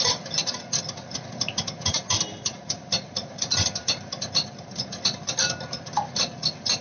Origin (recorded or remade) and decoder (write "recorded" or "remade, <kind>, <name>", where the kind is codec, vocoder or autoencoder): recorded